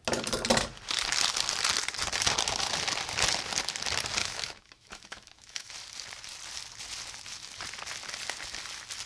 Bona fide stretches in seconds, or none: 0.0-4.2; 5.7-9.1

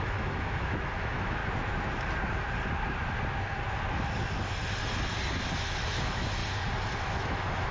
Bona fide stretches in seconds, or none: 1.4-6.0; 6.4-7.0

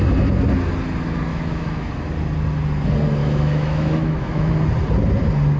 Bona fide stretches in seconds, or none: 0.0-1.3; 1.9-3.2; 4.5-5.6

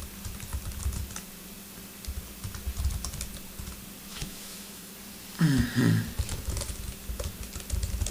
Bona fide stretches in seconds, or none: 0.0-4.1; 4.9-8.1

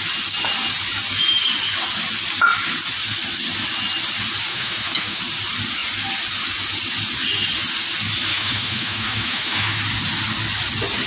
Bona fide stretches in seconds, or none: 0.0-4.5; 5.2-8.3; 9.8-11.1